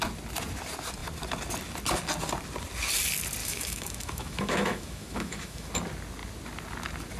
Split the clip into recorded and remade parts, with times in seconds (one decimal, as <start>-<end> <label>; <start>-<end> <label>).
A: 0.0-3.4 recorded; 3.4-5.7 remade; 5.7-7.2 recorded